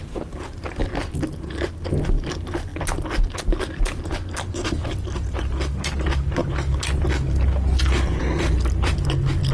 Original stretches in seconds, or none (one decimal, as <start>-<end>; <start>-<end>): 0.0-9.5